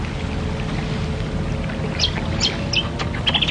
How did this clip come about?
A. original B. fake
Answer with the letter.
A